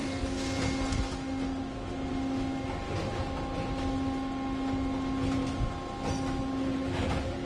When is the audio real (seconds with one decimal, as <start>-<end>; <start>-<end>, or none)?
0.0-7.5